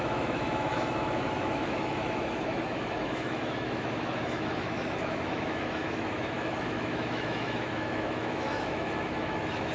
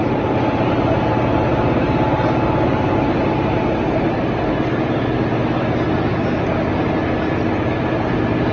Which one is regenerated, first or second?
first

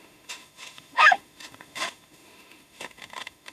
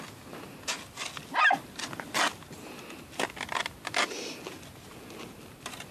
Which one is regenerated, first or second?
first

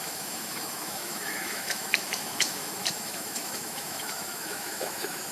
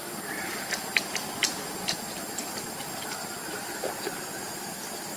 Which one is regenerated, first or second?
first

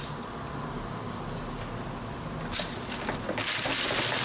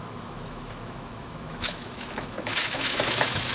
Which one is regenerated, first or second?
second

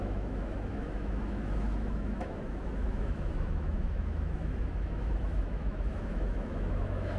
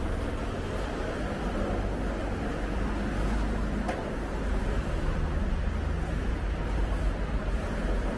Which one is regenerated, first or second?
first